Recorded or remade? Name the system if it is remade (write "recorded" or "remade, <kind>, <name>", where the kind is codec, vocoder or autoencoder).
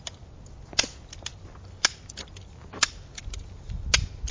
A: recorded